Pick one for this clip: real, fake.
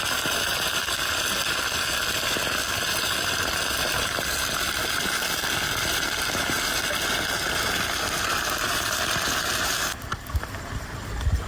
fake